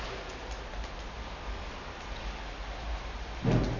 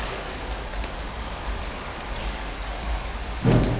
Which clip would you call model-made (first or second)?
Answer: second